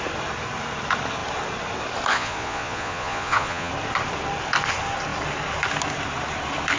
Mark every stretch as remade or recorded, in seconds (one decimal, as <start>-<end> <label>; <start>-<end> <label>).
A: 0.0-2.1 recorded; 2.1-3.7 remade; 3.7-6.8 recorded